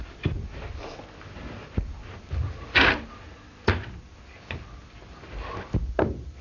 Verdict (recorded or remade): recorded